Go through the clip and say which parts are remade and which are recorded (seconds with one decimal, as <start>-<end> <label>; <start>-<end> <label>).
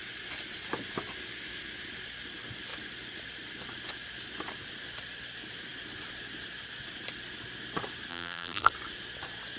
0.0-8.1 recorded; 8.1-8.7 remade; 8.7-9.6 recorded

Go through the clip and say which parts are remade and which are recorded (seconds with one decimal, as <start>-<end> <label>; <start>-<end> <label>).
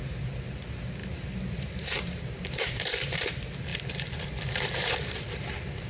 0.0-1.0 recorded; 1.0-3.3 remade; 3.3-3.7 recorded; 3.7-5.5 remade; 5.5-5.9 recorded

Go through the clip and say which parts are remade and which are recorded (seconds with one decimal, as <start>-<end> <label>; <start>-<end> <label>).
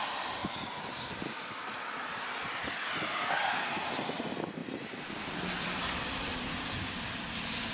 0.0-0.4 remade; 0.4-1.0 recorded; 1.0-7.7 remade